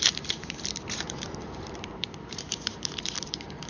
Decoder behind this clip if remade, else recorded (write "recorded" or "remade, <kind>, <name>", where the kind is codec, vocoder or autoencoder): remade, vocoder, BigVGAN v2